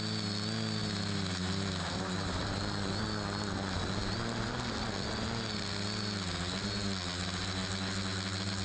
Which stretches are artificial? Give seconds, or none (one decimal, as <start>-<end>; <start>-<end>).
0.8-2.6